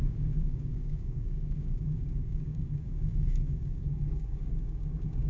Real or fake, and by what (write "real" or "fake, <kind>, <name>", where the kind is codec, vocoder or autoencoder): fake, codec, DAC